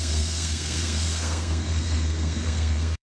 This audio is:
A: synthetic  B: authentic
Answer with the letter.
A